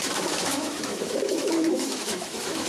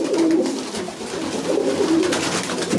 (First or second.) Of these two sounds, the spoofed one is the first